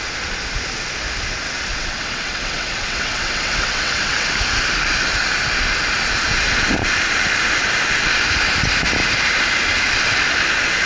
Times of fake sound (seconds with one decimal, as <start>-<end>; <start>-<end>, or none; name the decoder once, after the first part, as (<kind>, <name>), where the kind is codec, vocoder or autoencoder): 1.7-4.3 (vocoder, WaveNeXt)